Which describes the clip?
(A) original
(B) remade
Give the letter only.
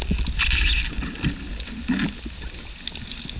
A